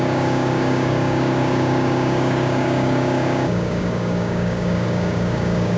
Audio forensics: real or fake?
fake